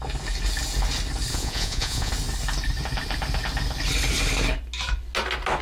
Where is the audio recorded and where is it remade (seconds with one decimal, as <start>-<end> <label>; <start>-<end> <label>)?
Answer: 0.0-1.3 recorded; 1.3-2.1 remade; 2.1-5.6 recorded